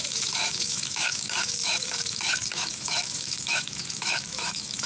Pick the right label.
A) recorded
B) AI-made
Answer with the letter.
B